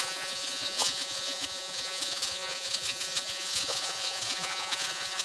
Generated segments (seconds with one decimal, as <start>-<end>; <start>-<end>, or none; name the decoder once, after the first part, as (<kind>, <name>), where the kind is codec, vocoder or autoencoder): 0.0-5.2 (vocoder, Vocos)